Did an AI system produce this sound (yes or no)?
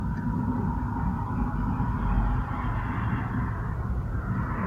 no